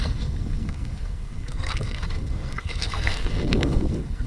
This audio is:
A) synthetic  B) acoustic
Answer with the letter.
A